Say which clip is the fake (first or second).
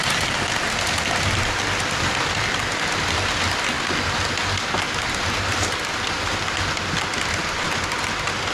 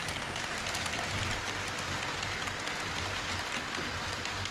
first